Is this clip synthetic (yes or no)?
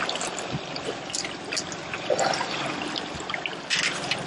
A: no